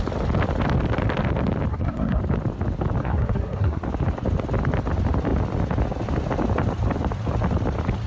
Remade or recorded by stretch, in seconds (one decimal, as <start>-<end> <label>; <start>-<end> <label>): 0.0-1.7 recorded; 1.7-2.2 remade; 2.2-3.0 recorded; 3.0-3.8 remade; 3.8-8.1 recorded